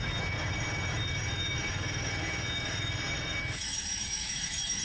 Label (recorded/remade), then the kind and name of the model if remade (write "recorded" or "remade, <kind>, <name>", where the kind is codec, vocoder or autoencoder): remade, autoencoder, DAC-VAE